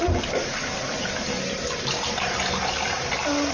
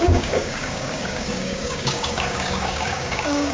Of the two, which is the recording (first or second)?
first